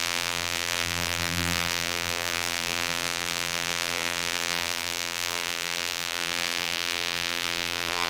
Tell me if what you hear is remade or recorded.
remade